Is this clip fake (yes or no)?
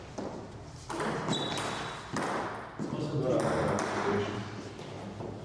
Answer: no